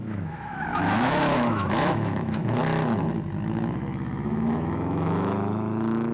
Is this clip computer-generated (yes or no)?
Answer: yes